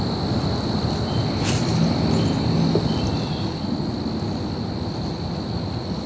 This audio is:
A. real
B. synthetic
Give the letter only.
A